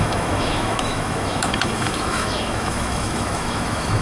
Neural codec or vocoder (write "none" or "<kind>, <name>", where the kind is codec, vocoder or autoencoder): autoencoder, DAC-VAE